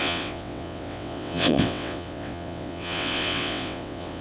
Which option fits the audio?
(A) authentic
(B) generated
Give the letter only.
B